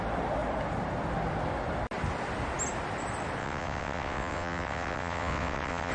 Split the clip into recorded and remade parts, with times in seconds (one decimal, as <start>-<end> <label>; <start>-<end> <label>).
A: 0.0-3.4 recorded; 3.4-5.9 remade